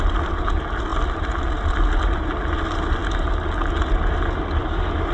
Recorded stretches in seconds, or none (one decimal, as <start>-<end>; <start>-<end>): 0.0-5.1